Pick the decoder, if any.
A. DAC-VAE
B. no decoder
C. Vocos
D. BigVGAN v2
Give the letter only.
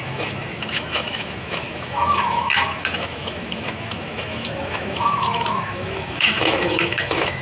A